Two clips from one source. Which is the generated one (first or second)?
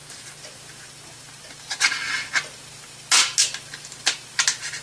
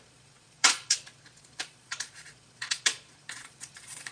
second